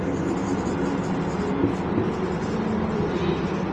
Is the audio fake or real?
real